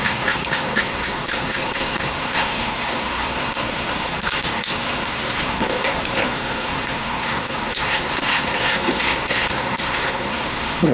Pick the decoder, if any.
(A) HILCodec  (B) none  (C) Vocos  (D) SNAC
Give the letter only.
D